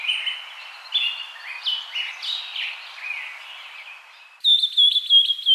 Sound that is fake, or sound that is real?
real